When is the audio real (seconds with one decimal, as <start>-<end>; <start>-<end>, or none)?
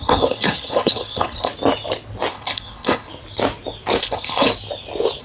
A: 1.5-2.3; 3.1-4.0; 4.5-5.2